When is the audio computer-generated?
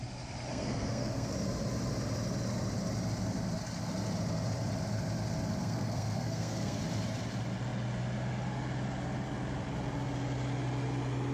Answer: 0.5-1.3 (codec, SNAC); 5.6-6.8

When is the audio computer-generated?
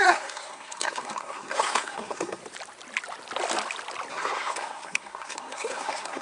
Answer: 0.0-2.4 (codec, SNAC); 4.1-6.2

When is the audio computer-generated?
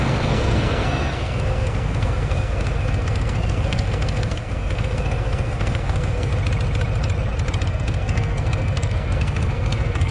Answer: 0.0-6.3 (codec, SNAC); 7.7-10.1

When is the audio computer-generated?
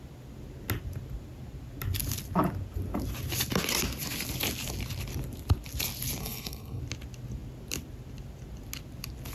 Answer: 6.2-6.8 (codec, SNAC)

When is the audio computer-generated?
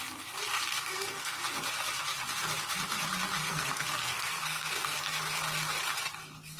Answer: 0.7-1.4 (codec, SNAC); 3.4-5.2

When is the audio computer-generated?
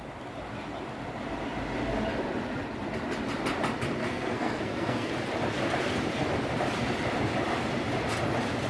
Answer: 4.0-5.1 (codec, SNAC)